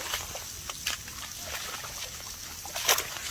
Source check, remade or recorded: recorded